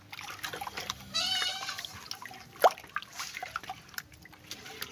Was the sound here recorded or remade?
recorded